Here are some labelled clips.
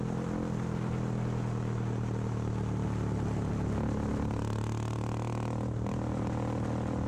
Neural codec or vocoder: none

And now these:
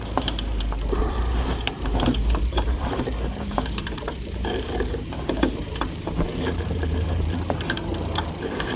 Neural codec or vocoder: vocoder, BigVGAN v2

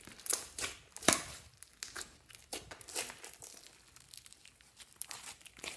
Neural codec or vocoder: none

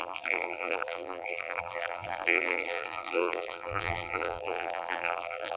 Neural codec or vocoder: vocoder, BigVGAN v2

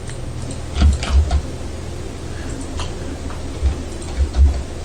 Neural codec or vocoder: none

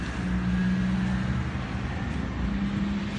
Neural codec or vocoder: none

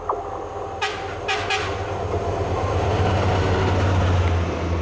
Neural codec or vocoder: none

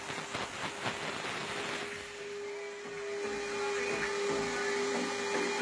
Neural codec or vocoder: none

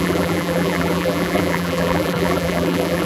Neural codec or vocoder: vocoder, BigVGAN v2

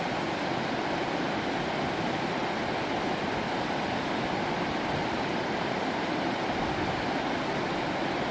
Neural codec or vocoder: vocoder, BigVGAN v2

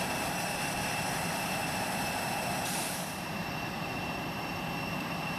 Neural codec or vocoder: vocoder, BigVGAN v2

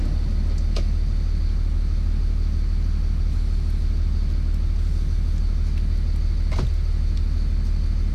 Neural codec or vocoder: none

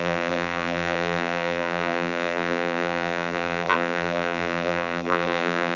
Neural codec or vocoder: vocoder, BigVGAN v2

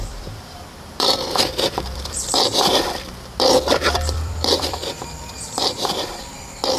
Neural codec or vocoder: vocoder, BigVGAN v2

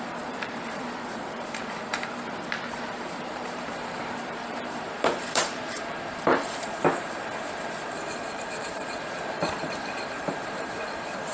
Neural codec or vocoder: vocoder, BigVGAN v2